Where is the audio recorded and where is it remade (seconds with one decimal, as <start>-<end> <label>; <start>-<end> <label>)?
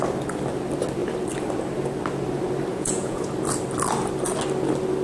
0.0-2.7 recorded; 2.7-3.3 remade; 3.3-5.0 recorded